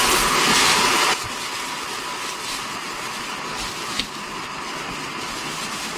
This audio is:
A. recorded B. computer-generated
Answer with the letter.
A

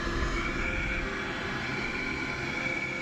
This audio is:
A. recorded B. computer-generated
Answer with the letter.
A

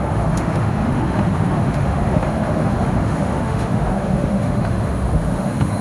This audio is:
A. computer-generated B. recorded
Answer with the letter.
A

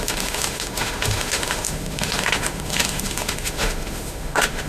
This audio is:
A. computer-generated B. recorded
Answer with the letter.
A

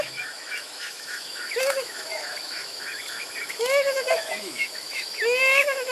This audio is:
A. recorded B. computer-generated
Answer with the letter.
B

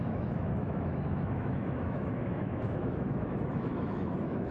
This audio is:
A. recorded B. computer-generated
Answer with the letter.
B